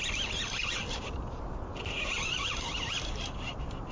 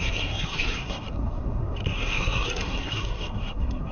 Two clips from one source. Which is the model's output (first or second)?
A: second